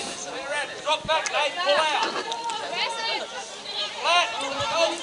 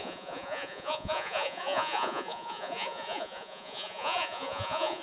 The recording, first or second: first